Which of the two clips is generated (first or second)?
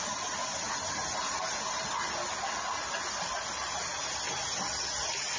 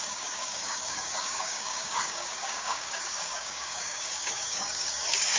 second